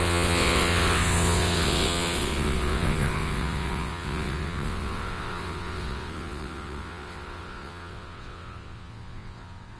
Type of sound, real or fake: fake